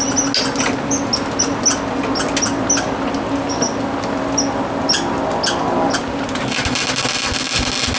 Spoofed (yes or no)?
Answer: no